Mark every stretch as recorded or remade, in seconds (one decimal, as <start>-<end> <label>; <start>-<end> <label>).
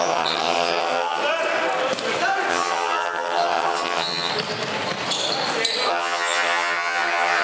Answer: 0.0-1.2 remade; 1.2-2.5 recorded; 2.5-4.3 remade; 4.3-5.9 recorded; 5.9-7.4 remade